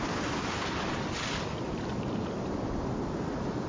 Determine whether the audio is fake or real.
real